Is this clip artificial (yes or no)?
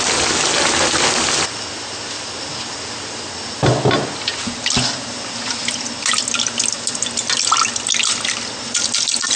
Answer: no